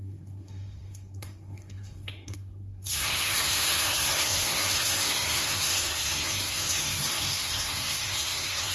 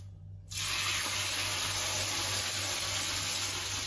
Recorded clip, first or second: second